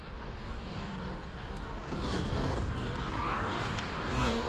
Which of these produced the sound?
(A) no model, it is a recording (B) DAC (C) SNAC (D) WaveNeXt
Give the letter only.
B